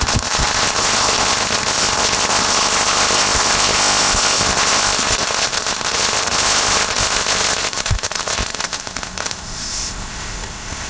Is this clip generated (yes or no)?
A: yes